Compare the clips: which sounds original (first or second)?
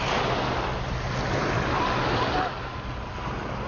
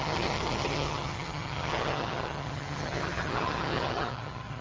first